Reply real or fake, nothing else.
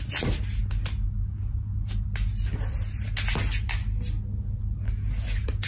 real